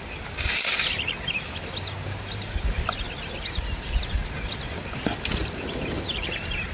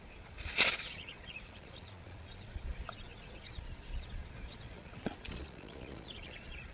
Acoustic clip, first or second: first